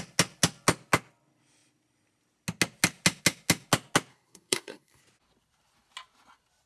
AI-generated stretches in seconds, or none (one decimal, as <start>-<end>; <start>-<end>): 4.1-5.0